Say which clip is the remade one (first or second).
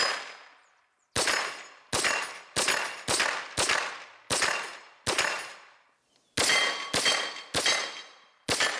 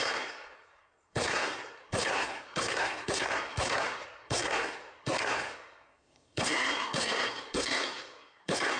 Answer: second